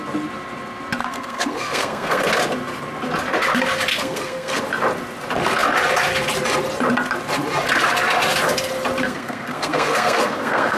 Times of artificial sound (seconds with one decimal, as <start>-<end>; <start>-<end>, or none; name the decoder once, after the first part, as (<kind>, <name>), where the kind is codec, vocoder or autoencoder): 1.0-2.3 (codec, SNAC); 3.9-4.6; 9.0-10.8